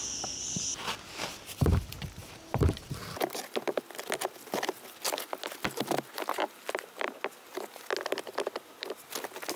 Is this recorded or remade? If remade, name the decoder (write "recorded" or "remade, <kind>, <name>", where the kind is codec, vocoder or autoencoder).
recorded